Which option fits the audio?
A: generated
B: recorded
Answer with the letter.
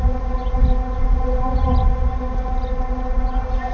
B